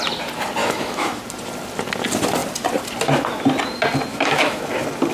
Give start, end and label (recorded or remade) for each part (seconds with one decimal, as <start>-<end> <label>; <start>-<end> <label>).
0.0-0.6 recorded; 0.6-1.2 remade; 1.2-4.1 recorded; 4.1-4.6 remade; 4.6-5.1 recorded